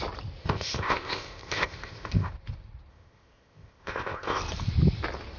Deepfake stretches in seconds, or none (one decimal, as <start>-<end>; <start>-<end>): 0.4-2.3; 2.9-4.4

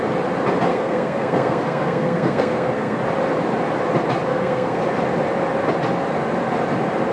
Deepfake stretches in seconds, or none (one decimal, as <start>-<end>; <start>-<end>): 0.7-3.0; 4.3-4.8

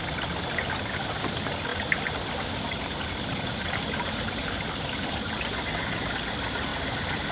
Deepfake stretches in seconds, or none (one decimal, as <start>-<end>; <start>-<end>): none

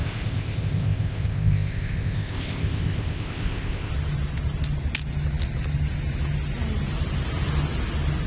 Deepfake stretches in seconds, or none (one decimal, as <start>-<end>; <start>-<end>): 0.0-3.9